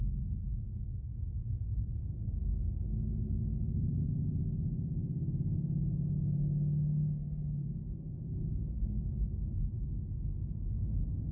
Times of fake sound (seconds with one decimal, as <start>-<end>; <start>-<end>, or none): 7.4-9.8